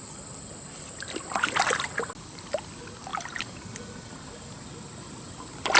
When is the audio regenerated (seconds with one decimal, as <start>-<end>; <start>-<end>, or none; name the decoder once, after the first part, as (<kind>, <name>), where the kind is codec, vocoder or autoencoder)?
none

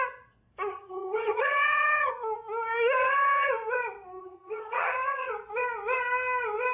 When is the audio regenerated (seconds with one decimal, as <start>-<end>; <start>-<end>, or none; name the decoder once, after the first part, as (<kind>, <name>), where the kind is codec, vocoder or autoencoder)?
0.7-2.1 (vocoder, HiFi-GAN); 3.0-3.5; 4.2-5.3

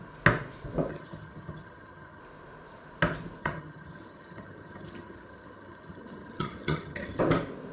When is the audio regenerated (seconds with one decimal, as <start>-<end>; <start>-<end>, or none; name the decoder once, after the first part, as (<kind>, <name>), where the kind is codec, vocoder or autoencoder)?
0.9-2.2 (vocoder, HiFi-GAN); 3.4-7.2

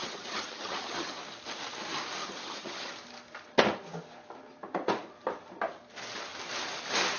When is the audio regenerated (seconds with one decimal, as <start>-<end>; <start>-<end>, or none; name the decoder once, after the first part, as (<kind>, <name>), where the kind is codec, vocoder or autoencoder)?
0.0-1.2 (vocoder, HiFi-GAN); 2.2-2.9

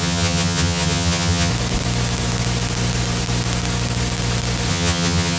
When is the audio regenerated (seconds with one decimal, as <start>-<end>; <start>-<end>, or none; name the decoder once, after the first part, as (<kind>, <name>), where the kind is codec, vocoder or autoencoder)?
0.0-1.5 (vocoder, HiFi-GAN); 4.7-5.4

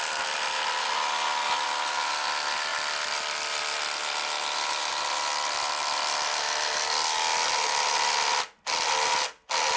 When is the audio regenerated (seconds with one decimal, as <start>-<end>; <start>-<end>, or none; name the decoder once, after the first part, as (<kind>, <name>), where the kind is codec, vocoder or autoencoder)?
none

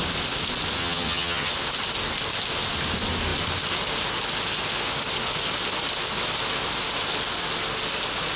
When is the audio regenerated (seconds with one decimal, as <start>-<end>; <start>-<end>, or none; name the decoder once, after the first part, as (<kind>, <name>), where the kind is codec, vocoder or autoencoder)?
0.8-1.5 (vocoder, HiFi-GAN)